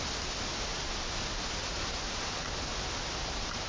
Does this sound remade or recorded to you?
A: recorded